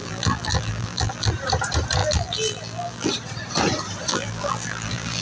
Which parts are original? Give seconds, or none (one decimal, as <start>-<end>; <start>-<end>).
1.3-2.0; 3.1-4.1